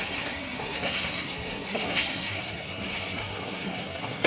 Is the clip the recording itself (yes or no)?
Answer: no